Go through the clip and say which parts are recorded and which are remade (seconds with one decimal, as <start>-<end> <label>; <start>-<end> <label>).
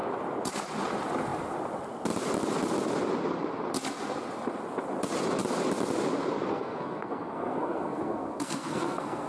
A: 0.0-6.5 recorded; 6.5-9.3 remade